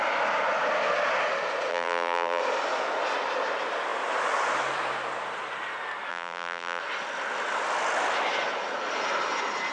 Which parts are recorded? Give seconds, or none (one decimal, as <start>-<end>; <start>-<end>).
0.0-1.7; 2.4-6.1; 6.8-9.7